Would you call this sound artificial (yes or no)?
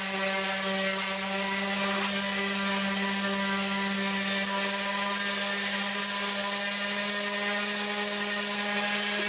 no